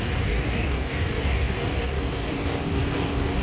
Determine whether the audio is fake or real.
fake